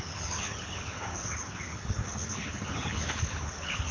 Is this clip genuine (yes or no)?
no